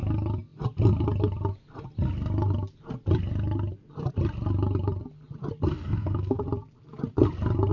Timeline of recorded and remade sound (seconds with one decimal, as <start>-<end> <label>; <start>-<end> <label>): 0.0-5.7 recorded; 5.7-6.4 remade; 6.4-7.7 recorded